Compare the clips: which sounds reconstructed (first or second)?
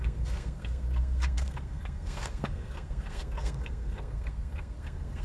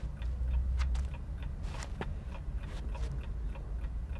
first